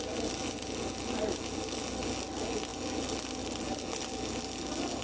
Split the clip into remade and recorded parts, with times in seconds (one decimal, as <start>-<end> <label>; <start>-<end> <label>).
0.0-5.0 recorded